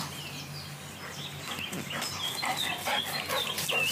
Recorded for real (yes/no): yes